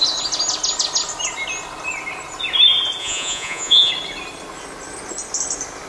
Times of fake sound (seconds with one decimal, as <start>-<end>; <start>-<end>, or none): 3.0-3.9